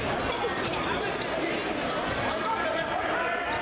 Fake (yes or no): no